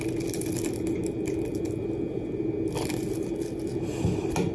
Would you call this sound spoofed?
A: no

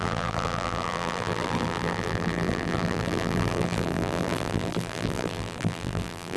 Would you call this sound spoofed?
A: yes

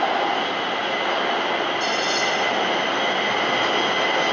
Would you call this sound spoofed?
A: no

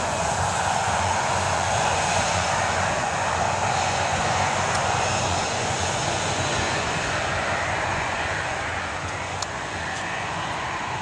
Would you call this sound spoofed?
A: yes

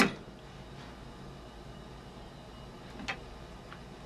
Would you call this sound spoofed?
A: no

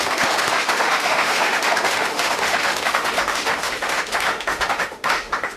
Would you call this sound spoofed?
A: yes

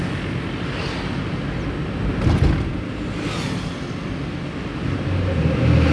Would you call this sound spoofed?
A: no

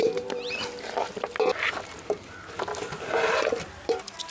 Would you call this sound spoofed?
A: no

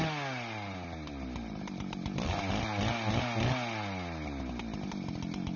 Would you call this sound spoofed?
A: no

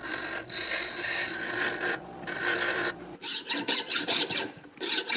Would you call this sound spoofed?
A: no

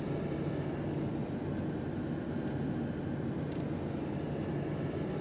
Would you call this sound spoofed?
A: no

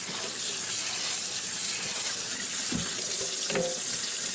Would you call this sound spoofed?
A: yes